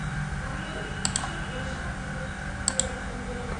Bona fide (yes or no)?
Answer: yes